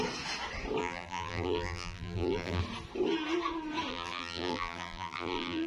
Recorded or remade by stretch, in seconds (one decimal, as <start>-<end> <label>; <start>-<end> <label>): 0.0-0.8 recorded; 0.8-2.6 remade; 2.6-3.9 recorded; 3.9-5.7 remade